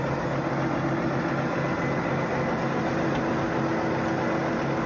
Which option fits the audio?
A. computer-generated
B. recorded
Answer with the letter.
B